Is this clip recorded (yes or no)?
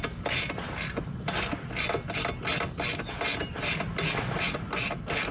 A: yes